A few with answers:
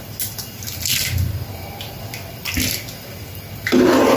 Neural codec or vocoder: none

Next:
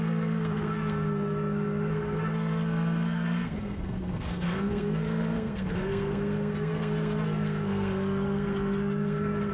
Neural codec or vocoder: codec, SNAC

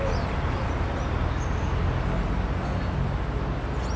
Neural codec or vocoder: none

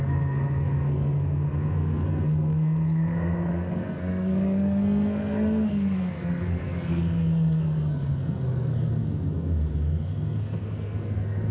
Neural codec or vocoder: codec, SNAC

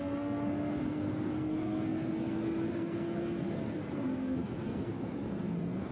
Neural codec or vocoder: codec, SNAC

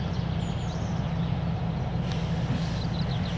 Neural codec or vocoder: none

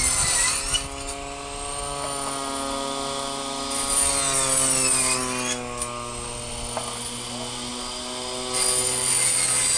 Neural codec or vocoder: none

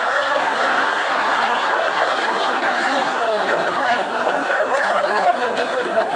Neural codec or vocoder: codec, SNAC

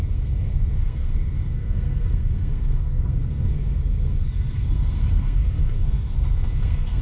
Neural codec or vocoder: codec, SNAC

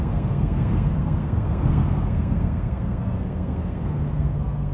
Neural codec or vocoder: codec, SNAC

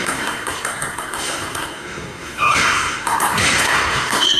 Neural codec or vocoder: codec, SNAC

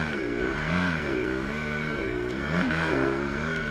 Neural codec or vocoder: codec, SNAC